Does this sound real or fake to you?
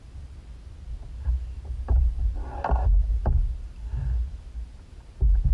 real